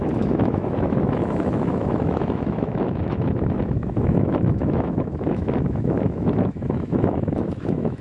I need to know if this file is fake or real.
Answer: fake